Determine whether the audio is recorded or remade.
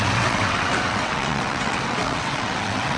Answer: remade